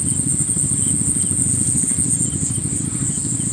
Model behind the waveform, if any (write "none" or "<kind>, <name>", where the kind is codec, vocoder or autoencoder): none